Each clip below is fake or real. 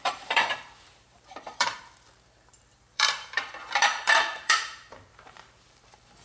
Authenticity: fake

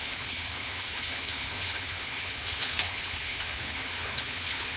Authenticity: fake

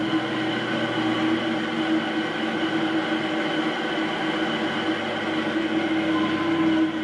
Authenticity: real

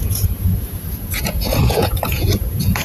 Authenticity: fake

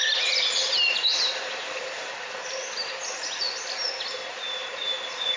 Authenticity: real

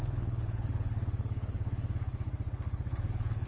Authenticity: fake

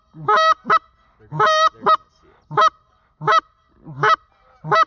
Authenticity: real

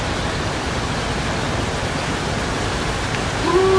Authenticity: real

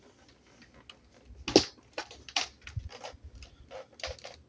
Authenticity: real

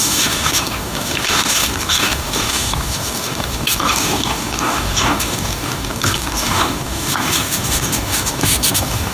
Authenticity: fake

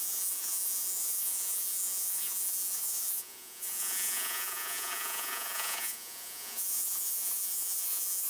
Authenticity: fake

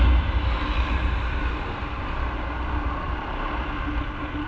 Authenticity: real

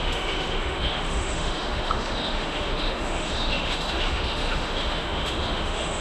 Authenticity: fake